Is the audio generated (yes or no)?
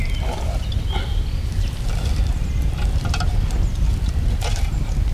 no